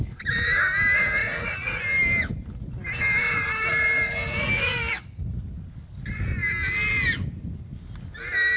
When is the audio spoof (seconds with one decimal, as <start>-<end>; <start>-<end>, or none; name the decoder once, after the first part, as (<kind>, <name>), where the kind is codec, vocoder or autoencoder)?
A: 1.2-1.8 (vocoder, Vocos)